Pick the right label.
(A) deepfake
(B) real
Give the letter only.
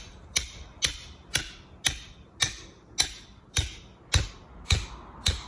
B